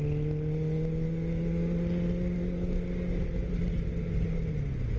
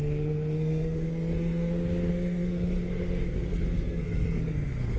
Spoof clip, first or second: second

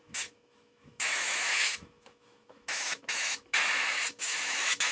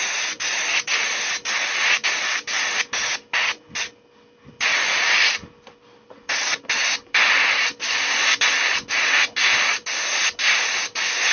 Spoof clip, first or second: first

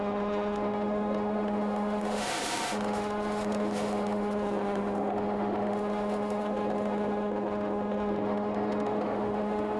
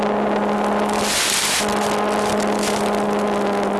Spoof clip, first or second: first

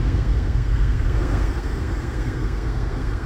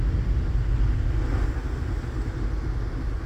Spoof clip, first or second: first